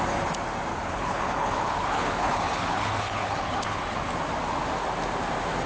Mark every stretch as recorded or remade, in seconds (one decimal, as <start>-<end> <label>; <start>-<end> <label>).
0.0-0.7 recorded; 0.7-4.1 remade; 4.1-5.7 recorded